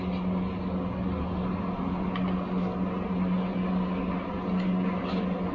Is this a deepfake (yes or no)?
no